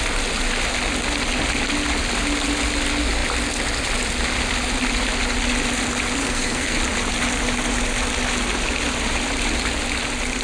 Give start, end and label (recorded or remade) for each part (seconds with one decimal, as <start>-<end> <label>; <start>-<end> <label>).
0.0-6.2 recorded; 6.2-6.8 remade; 6.8-10.4 recorded